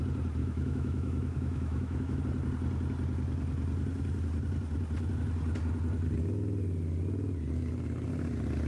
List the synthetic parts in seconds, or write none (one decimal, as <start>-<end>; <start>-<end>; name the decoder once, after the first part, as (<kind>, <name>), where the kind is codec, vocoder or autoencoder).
0.4-2.2 (autoencoder, DAC-VAE)